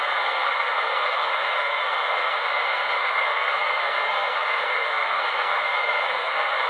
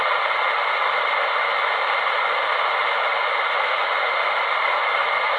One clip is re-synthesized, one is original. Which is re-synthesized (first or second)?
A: first